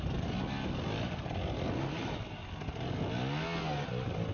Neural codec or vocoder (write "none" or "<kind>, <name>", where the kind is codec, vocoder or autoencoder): none